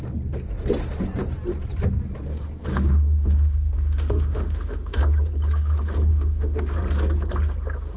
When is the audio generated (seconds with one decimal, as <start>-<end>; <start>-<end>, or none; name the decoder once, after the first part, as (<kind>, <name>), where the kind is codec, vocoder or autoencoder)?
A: 2.7-5.0 (autoencoder, DAC-VAE); 6.1-6.7